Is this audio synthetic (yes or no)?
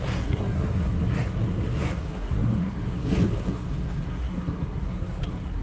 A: yes